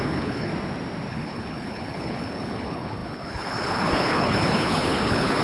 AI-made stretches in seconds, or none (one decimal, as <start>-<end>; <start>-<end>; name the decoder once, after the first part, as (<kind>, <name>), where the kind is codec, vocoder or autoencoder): 0.0-0.5 (codec, HILCodec); 1.1-5.4